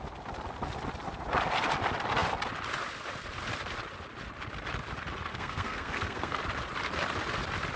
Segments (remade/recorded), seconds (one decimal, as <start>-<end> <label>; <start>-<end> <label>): 0.0-5.3 recorded; 5.3-6.4 remade; 6.4-7.8 recorded